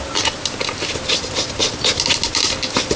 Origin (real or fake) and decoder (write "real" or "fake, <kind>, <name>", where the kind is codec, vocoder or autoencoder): real